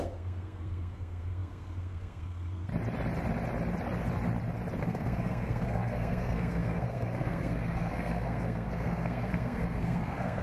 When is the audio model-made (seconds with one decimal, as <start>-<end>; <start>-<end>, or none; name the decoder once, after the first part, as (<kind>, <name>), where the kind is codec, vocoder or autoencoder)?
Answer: 0.0-2.7 (codec, SNAC); 4.8-10.4